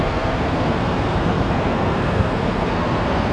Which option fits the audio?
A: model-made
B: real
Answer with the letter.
A